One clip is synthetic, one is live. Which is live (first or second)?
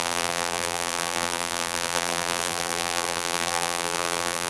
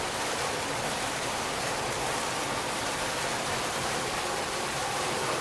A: second